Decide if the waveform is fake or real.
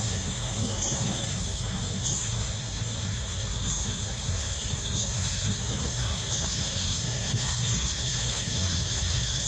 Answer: fake